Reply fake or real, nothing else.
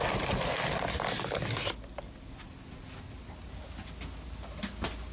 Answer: real